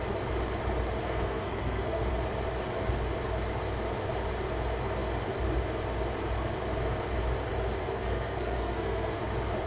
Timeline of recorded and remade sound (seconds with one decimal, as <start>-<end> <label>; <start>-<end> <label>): 0.0-1.0 recorded; 1.0-2.1 remade; 2.1-7.8 recorded; 7.8-9.2 remade; 9.2-9.7 recorded